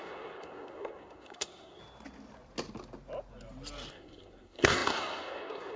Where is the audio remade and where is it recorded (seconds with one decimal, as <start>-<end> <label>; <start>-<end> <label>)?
0.0-1.8 remade; 1.8-3.9 recorded; 3.9-5.8 remade